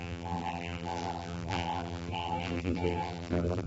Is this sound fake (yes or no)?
yes